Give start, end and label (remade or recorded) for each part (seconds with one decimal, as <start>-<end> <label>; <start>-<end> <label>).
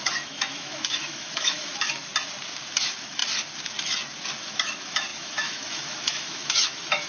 0.0-2.1 remade; 2.1-2.8 recorded; 2.8-3.2 remade; 3.2-4.4 recorded; 4.4-7.1 remade